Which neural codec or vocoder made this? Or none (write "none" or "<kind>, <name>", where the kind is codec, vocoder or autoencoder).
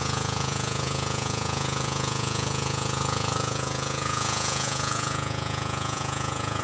vocoder, Vocos